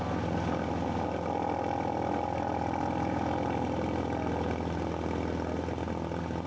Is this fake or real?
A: real